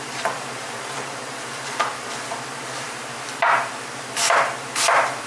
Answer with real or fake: fake